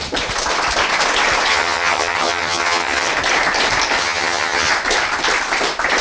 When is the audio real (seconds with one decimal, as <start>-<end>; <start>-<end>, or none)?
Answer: 0.0-1.5; 3.1-4.0; 4.7-6.0